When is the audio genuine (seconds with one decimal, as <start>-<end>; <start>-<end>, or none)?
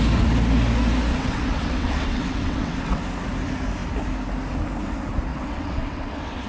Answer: 0.0-1.1; 3.0-5.3